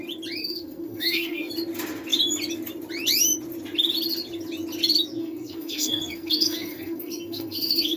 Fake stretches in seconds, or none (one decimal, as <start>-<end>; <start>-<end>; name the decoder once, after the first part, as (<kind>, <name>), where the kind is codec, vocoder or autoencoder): 0.4-1.5 (codec, SNAC); 5.2-8.0